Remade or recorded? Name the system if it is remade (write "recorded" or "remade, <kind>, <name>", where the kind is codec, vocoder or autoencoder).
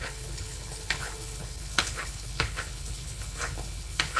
remade, codec, HILCodec